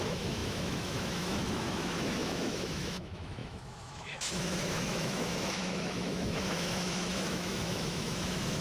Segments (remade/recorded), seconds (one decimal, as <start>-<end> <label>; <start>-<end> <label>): 0.0-8.6 remade

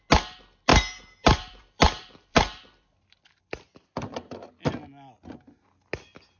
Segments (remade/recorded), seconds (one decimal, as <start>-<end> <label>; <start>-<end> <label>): 0.0-0.7 recorded; 0.7-4.5 remade; 4.5-6.4 recorded

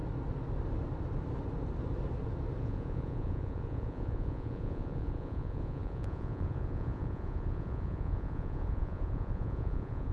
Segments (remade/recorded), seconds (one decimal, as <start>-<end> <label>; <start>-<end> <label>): 0.0-2.6 recorded; 2.6-10.1 remade

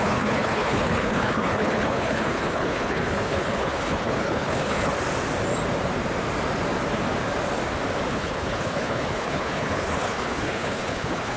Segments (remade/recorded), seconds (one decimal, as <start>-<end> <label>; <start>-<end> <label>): 0.0-4.9 remade; 4.9-8.1 recorded; 8.1-11.4 remade

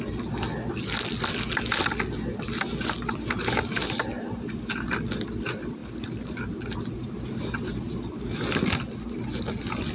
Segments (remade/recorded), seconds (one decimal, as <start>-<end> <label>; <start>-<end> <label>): 0.0-9.9 recorded

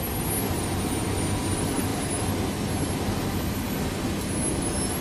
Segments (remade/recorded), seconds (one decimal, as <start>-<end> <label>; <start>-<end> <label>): 0.0-5.0 recorded